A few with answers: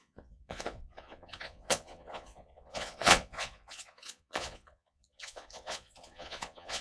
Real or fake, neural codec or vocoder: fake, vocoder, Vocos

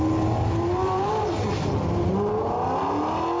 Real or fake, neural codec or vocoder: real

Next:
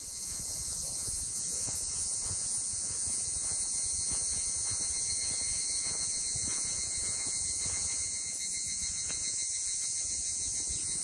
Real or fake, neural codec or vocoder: fake, vocoder, Vocos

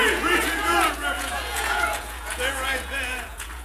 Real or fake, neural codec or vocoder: fake, vocoder, Vocos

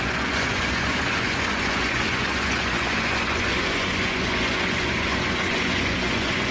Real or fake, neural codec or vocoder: fake, vocoder, Vocos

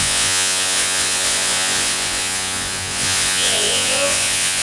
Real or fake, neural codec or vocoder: fake, vocoder, Vocos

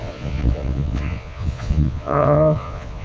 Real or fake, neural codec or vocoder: fake, vocoder, Vocos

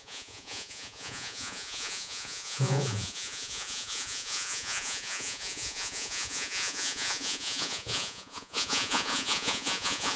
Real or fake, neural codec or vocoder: fake, vocoder, Vocos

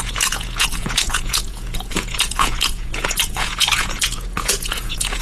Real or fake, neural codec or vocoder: fake, vocoder, Vocos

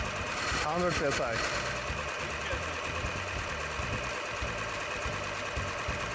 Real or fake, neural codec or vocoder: real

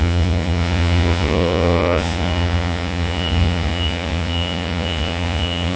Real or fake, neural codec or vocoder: fake, vocoder, Vocos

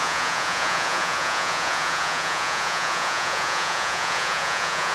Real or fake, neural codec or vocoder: fake, vocoder, Vocos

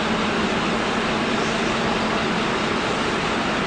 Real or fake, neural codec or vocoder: real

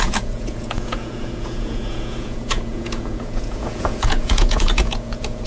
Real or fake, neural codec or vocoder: fake, vocoder, Vocos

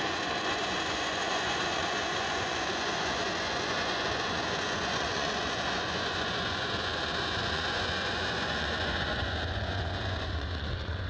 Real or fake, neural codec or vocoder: fake, vocoder, Vocos